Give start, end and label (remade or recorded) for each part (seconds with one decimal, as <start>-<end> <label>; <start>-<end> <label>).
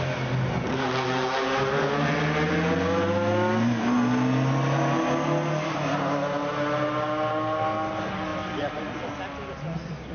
0.0-10.1 recorded